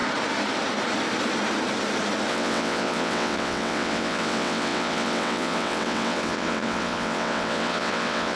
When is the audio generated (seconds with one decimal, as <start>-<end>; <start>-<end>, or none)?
2.3-8.4